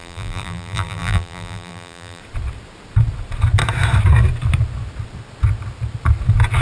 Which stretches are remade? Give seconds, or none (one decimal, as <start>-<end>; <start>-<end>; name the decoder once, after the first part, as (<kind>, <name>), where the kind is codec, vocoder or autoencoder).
0.0-2.2 (vocoder, BigVGAN v2)